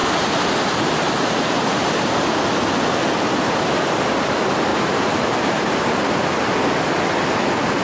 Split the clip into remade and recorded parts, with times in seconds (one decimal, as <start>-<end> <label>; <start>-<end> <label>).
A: 0.0-2.3 remade; 2.3-4.7 recorded; 4.7-5.9 remade; 5.9-7.8 recorded